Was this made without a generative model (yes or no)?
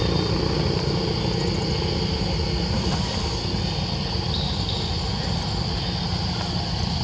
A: yes